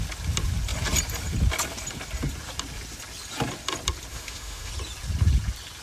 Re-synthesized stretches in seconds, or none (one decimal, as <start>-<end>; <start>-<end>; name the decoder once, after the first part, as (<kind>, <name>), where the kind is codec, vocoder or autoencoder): 4.1-4.7 (autoencoder, DAC-VAE)

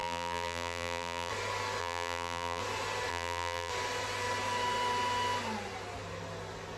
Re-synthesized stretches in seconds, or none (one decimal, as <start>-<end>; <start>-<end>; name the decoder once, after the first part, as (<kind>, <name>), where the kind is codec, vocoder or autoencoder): 0.0-1.3 (vocoder, BigVGAN v2); 1.8-2.6; 3.1-3.7

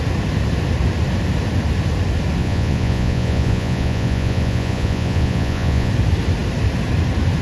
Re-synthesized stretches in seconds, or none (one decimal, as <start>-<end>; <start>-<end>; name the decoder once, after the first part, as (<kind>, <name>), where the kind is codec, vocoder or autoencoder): 2.4-5.9 (vocoder, Vocos)

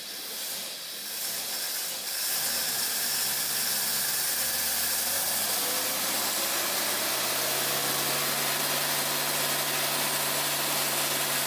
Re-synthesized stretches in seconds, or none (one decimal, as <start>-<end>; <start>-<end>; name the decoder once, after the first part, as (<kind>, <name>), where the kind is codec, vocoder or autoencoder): none

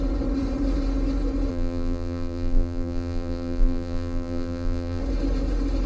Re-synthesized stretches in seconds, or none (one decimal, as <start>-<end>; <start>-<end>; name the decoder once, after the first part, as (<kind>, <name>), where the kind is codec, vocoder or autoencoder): 1.5-5.0 (vocoder, BigVGAN v2)

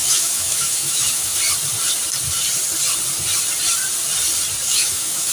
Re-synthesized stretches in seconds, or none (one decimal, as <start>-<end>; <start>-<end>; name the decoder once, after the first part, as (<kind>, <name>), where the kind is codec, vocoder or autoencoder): 0.0-1.4 (autoencoder, DAC-VAE); 4.7-5.3

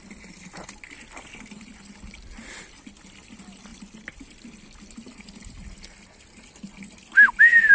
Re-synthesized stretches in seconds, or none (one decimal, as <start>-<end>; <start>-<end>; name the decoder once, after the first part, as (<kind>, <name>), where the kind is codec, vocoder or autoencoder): none

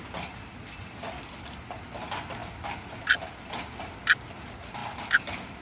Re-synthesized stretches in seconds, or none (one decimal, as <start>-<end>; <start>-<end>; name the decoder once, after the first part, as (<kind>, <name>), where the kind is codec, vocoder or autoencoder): none